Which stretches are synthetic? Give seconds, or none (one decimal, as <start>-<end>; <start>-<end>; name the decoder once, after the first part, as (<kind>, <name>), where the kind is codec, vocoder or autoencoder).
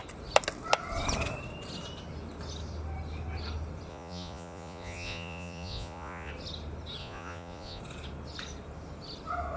3.9-6.3 (vocoder, Vocos); 7.0-7.8